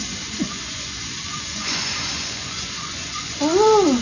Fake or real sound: fake